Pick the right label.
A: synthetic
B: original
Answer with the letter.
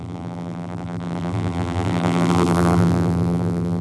A